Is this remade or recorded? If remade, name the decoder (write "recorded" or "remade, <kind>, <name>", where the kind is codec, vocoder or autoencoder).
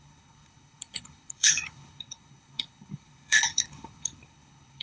remade, codec, HILCodec